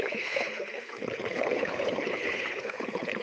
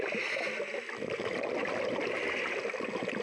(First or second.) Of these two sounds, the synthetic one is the first